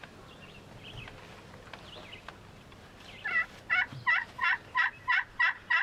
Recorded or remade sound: recorded